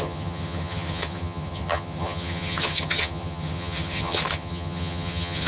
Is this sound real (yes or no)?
no